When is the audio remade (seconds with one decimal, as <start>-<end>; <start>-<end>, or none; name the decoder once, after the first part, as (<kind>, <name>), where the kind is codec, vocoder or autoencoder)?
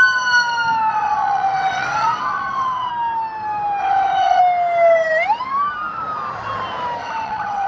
0.9-2.9 (vocoder, WaveNeXt); 3.8-4.4; 7.0-7.7